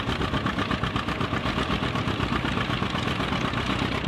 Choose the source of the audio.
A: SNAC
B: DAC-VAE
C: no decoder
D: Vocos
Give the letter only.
C